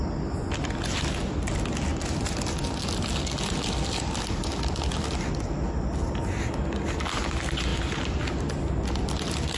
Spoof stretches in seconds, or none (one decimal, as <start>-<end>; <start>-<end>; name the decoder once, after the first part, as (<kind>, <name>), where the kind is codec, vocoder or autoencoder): 1.9-2.8 (vocoder, BigVGAN v2)